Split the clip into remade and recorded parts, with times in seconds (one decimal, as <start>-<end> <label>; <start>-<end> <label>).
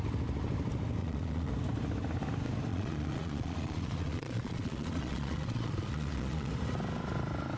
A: 0.0-1.0 recorded; 1.0-1.5 remade; 1.5-2.7 recorded; 2.7-6.5 remade; 6.5-7.6 recorded